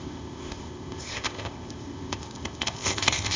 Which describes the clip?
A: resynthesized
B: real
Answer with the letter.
A